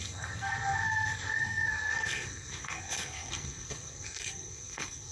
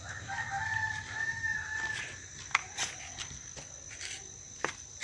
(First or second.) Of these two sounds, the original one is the second